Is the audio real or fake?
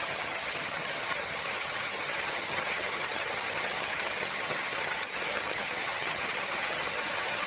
fake